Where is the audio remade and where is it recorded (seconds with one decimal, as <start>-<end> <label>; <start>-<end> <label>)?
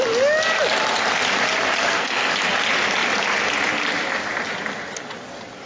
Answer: 0.0-1.8 recorded; 1.8-2.3 remade; 2.3-5.7 recorded